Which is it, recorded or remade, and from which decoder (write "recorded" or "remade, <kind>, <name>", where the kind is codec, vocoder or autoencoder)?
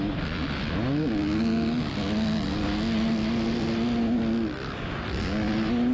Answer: recorded